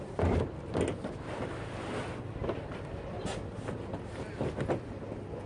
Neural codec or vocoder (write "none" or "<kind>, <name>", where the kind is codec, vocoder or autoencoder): none